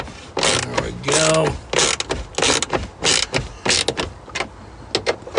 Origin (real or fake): real